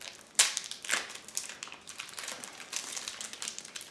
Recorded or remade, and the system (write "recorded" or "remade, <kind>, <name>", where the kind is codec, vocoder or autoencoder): recorded